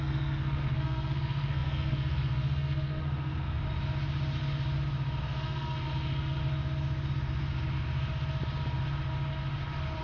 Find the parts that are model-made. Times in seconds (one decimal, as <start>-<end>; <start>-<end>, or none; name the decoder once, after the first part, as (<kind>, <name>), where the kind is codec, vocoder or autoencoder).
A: 0.0-3.6 (codec, SNAC); 5.2-6.4